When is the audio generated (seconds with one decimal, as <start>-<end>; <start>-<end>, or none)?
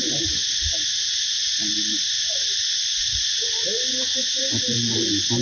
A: 0.4-3.6; 4.1-5.4